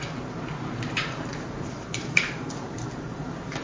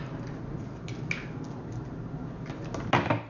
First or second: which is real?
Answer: second